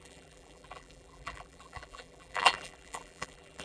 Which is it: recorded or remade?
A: remade